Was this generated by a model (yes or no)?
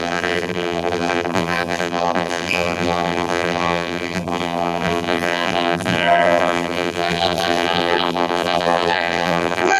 yes